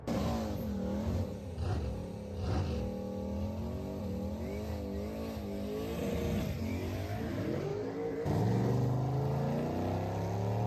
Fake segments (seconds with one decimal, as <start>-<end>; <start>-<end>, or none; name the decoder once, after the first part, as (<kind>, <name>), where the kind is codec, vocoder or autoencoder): 7.7-8.4 (codec, DAC)